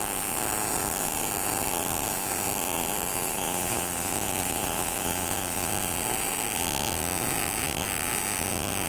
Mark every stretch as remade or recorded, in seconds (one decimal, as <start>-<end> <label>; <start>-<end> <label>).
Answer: 0.0-3.1 recorded; 3.1-5.7 remade; 5.7-8.9 recorded